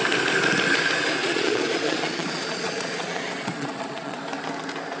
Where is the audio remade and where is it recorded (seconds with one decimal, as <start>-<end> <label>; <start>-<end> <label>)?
0.0-1.2 recorded; 1.2-4.2 remade; 4.2-5.0 recorded